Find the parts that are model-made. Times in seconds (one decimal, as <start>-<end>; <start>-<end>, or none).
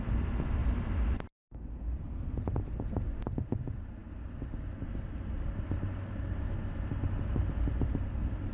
none